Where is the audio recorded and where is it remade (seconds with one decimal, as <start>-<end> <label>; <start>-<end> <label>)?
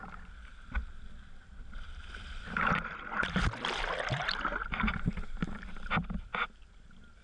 0.0-6.3 remade; 6.3-7.2 recorded